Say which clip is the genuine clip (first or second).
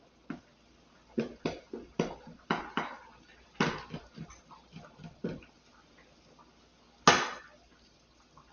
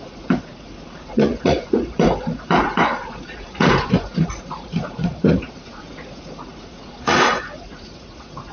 first